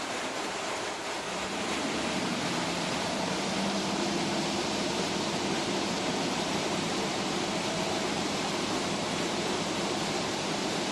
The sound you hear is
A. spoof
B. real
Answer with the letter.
A